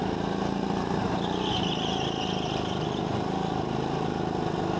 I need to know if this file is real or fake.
real